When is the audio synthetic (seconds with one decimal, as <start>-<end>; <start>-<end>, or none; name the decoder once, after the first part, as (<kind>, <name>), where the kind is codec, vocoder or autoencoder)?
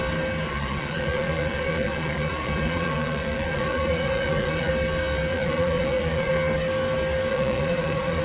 0.5-4.7 (vocoder, Vocos); 5.3-6.3; 7.3-8.2